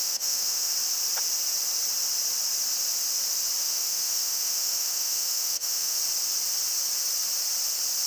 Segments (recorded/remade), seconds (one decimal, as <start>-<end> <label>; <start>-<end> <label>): 0.0-0.7 remade; 0.7-3.6 recorded; 3.6-6.0 remade; 6.0-8.1 recorded